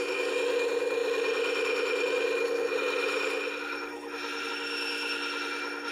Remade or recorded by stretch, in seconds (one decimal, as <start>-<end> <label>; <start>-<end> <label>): 0.0-5.9 recorded